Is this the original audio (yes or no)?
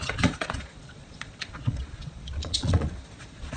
no